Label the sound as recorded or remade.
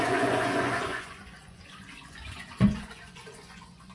remade